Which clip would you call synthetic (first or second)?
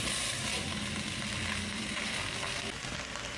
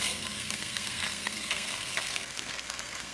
second